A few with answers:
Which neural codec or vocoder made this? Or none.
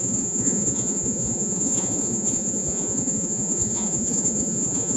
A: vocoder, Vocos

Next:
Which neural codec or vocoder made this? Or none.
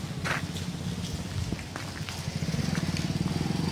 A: none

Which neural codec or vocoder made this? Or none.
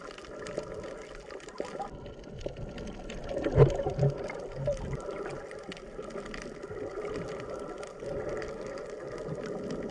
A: none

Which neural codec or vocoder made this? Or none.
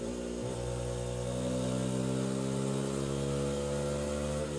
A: none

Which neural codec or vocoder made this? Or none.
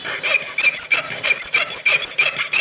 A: none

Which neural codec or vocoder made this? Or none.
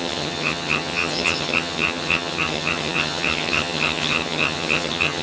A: vocoder, HiFi-GAN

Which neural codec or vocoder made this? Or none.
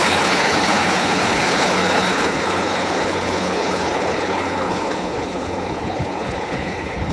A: codec, HILCodec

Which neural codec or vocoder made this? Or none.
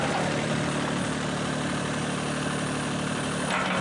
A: none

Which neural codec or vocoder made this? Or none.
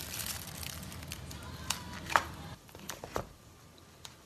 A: vocoder, BigVGAN v2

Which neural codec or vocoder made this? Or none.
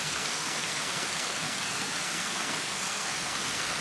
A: codec, SNAC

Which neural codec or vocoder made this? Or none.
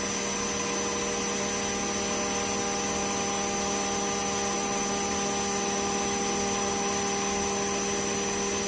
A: none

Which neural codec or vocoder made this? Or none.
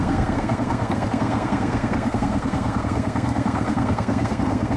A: codec, SNAC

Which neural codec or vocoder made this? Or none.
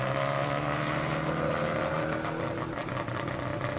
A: none